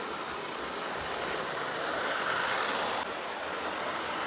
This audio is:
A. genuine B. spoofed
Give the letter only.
A